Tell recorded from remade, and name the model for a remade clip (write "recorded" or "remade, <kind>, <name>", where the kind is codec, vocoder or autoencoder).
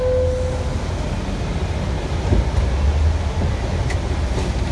recorded